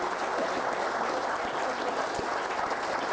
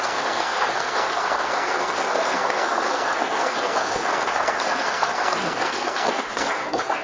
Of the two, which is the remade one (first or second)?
second